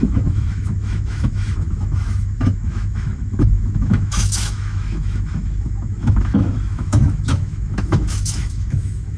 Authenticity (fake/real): fake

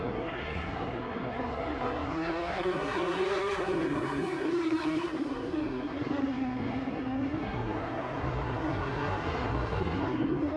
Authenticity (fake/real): fake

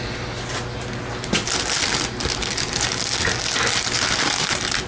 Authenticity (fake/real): real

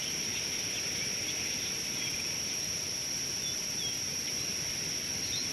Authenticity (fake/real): fake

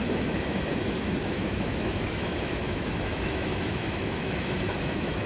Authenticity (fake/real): fake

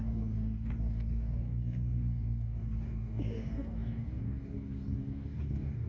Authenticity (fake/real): fake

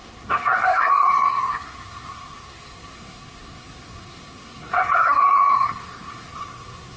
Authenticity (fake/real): fake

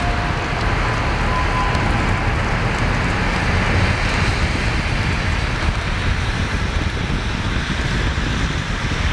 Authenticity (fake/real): real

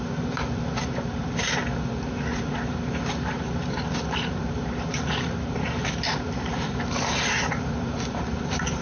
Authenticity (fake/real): fake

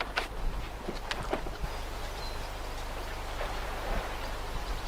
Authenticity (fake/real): real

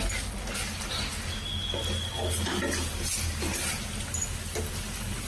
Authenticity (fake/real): real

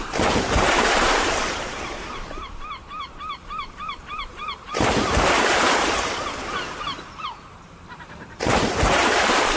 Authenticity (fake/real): fake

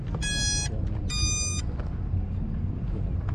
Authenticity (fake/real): real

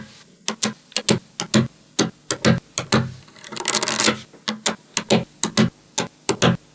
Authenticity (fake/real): real